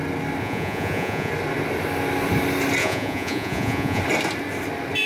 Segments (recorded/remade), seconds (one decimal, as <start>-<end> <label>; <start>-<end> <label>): 0.0-0.4 recorded; 0.4-1.3 remade; 1.3-2.8 recorded; 2.8-4.0 remade; 4.0-5.1 recorded